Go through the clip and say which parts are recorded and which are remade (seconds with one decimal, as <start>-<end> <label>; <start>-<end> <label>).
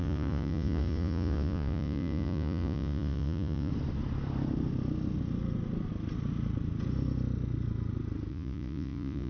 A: 0.0-3.7 remade; 3.7-8.3 recorded; 8.3-9.3 remade